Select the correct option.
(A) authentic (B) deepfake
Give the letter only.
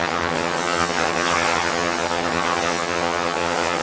B